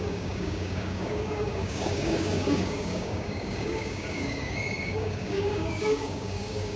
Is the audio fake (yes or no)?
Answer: yes